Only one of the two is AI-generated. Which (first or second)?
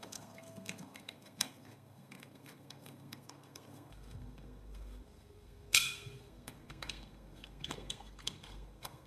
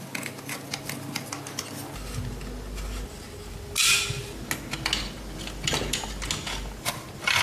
first